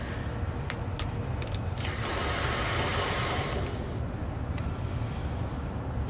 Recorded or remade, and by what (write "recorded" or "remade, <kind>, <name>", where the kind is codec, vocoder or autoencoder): recorded